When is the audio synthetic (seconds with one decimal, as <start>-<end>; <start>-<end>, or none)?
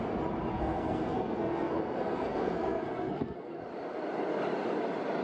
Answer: 0.5-3.6